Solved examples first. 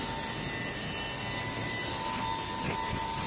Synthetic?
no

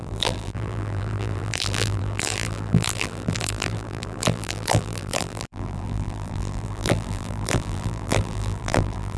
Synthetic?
yes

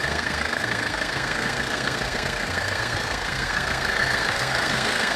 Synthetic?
yes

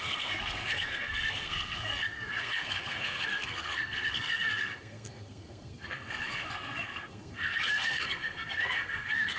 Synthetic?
yes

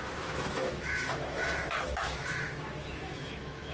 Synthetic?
yes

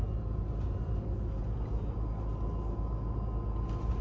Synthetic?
no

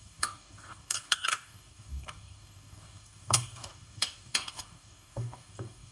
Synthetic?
yes